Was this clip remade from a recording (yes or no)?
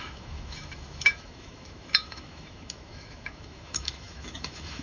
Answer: yes